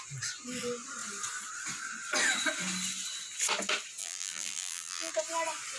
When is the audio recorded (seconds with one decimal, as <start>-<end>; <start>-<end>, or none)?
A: 0.0-4.0; 5.1-5.8